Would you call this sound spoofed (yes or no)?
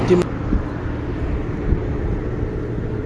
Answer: no